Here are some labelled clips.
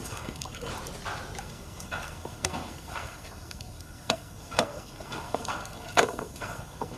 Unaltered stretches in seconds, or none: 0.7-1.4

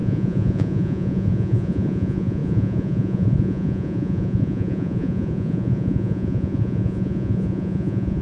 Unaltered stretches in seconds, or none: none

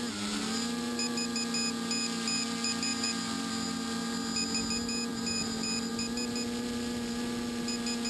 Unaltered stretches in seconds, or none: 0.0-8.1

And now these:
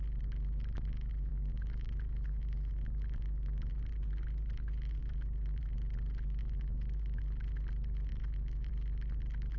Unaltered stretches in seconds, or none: 0.0-1.3; 3.7-5.0; 5.6-6.4; 7.2-8.1; 8.7-9.6